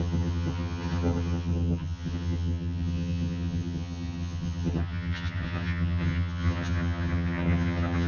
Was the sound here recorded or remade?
remade